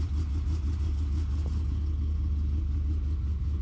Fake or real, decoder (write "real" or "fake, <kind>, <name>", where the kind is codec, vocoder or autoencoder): real